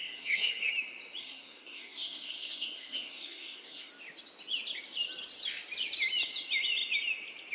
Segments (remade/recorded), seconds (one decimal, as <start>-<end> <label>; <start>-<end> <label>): 0.0-0.7 remade; 0.7-1.2 recorded; 1.2-3.9 remade; 3.9-7.5 recorded